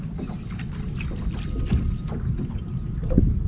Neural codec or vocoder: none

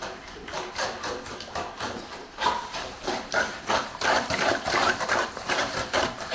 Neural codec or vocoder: vocoder, BigVGAN v2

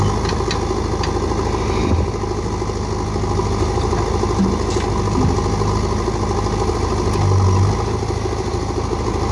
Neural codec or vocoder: none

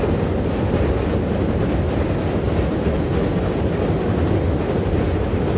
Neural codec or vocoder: none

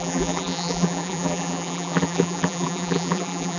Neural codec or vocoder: vocoder, BigVGAN v2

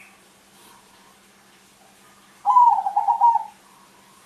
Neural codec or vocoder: none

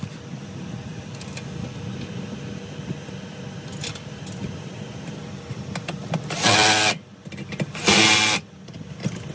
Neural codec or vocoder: vocoder, BigVGAN v2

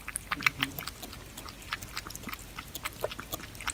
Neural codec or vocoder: none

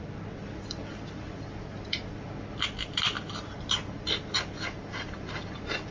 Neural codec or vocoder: none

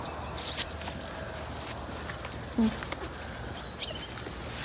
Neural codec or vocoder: none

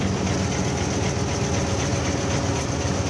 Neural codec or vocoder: none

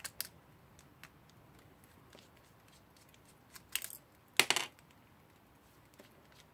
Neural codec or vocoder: none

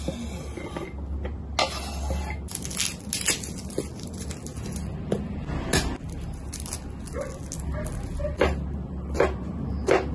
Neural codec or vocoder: none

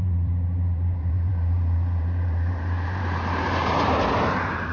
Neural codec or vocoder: vocoder, BigVGAN v2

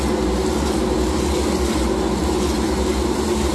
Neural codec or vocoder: none